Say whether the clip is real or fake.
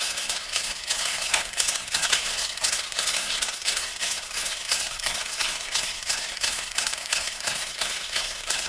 fake